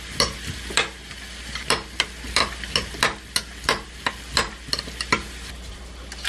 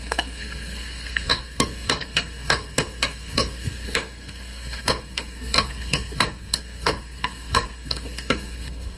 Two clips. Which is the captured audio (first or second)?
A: first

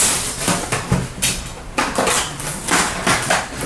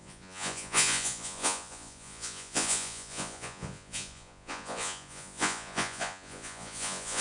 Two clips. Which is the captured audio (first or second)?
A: first